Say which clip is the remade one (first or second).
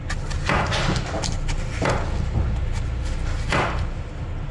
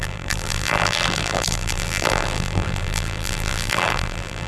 second